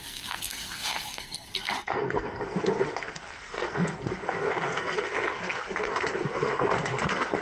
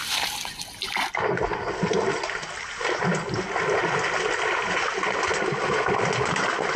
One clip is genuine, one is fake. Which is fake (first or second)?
first